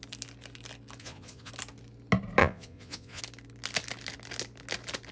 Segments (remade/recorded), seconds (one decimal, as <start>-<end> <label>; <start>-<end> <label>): 0.0-1.0 recorded; 1.0-1.5 remade; 1.5-2.4 recorded; 2.4-3.2 remade; 3.2-5.1 recorded